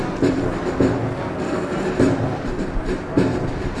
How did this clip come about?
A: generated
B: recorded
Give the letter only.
B